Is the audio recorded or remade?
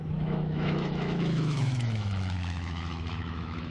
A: remade